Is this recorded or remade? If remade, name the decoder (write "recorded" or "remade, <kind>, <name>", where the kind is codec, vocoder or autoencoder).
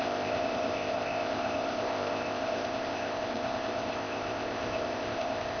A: remade, codec, ZipCodec